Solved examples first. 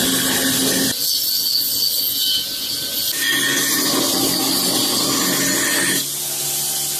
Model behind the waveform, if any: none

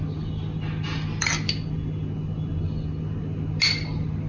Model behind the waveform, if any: none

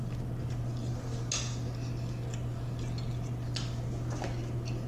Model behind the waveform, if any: none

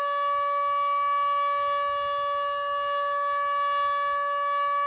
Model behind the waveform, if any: none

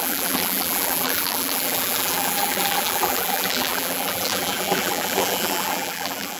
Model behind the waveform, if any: vocoder, BigVGAN v2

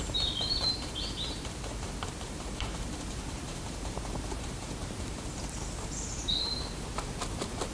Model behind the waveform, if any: vocoder, BigVGAN v2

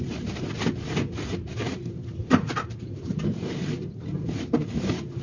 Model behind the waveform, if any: vocoder, BigVGAN v2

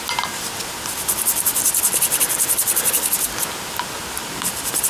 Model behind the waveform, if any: none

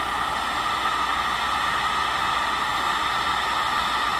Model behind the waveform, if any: none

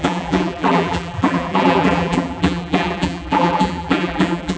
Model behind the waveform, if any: vocoder, BigVGAN v2